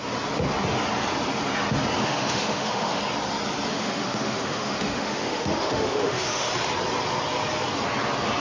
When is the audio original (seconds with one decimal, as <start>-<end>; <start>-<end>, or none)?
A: 0.0-2.0; 3.0-3.7; 6.5-8.4